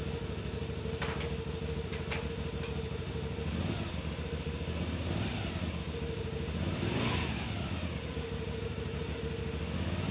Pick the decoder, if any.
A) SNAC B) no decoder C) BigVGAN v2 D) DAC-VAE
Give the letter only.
B